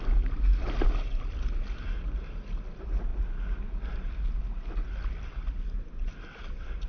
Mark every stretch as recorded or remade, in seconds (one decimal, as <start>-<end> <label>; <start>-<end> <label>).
0.0-6.9 recorded